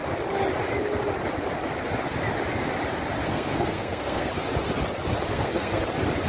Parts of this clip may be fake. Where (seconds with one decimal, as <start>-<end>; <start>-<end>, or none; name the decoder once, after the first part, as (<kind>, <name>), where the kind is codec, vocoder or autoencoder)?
3.2-4.3 (codec, SNAC); 5.3-5.8